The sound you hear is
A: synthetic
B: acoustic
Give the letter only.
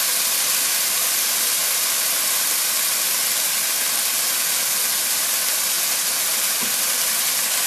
B